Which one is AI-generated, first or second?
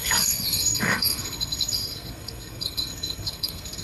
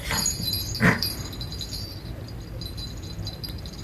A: first